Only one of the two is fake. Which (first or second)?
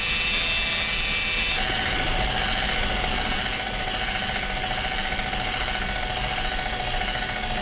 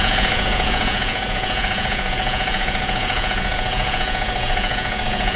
second